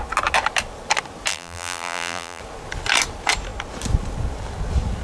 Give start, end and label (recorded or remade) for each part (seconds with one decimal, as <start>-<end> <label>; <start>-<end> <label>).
0.0-1.3 recorded; 1.3-2.4 remade; 2.4-5.0 recorded